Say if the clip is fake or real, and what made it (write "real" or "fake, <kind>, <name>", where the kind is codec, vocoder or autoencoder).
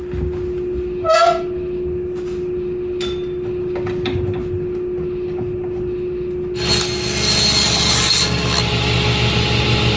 real